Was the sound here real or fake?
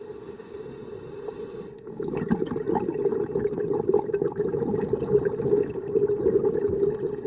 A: real